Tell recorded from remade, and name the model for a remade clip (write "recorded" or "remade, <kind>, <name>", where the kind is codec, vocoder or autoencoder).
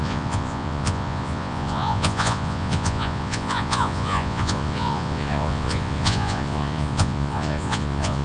remade, vocoder, Vocos